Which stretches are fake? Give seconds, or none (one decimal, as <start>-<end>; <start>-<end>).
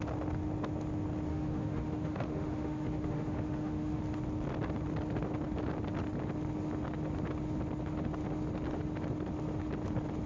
1.3-4.0